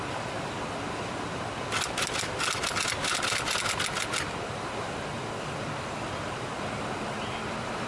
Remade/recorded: recorded